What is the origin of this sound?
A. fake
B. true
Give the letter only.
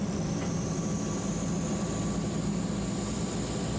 B